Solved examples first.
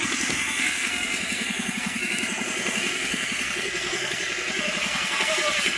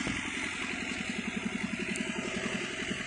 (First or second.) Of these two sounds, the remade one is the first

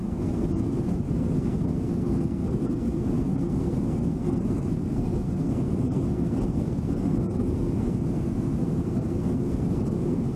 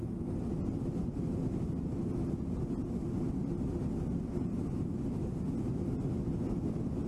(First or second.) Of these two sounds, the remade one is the first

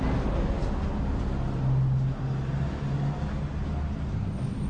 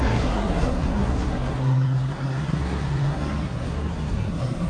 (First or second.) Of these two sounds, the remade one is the second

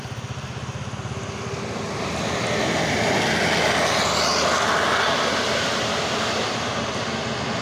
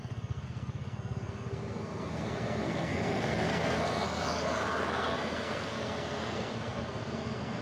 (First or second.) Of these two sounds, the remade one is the second